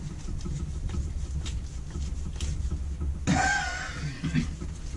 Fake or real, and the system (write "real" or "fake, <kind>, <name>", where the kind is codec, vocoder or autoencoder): real